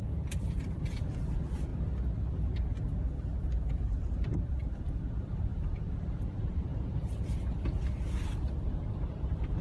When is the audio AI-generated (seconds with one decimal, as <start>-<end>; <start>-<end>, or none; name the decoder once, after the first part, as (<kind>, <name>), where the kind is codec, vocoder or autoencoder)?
0.0-9.6 (vocoder, BigVGAN v2)

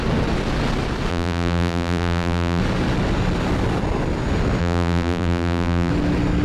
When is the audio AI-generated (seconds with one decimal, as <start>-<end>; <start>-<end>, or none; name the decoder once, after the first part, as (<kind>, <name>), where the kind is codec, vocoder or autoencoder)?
1.1-2.6 (vocoder, BigVGAN v2); 4.6-5.9

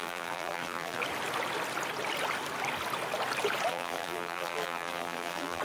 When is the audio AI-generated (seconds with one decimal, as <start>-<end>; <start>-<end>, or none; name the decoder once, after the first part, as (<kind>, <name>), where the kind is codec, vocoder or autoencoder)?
0.0-1.0 (vocoder, BigVGAN v2); 3.7-5.6

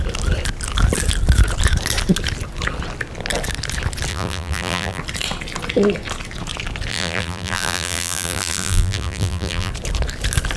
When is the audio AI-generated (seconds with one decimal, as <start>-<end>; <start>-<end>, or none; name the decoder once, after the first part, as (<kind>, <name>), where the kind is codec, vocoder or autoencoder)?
4.1-5.0 (vocoder, BigVGAN v2); 6.9-9.7

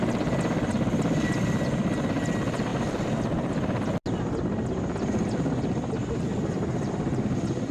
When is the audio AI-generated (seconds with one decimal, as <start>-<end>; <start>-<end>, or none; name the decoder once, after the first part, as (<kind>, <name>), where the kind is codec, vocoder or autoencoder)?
none

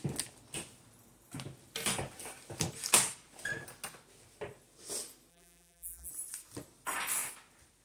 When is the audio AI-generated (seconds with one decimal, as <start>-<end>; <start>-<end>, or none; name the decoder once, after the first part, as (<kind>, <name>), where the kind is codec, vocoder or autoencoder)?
5.3-6.1 (vocoder, BigVGAN v2)

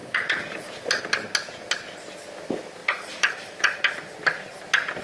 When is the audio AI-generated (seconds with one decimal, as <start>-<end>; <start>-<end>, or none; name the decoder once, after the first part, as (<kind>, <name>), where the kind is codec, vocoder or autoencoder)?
0.0-1.0 (vocoder, BigVGAN v2); 2.8-3.8